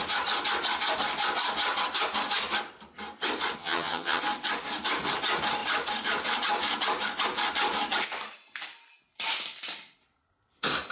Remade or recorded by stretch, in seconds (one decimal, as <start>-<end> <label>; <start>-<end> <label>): 0.0-3.6 recorded; 3.6-4.2 remade; 4.2-10.9 recorded